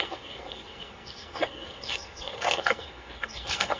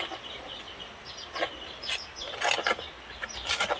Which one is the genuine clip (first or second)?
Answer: second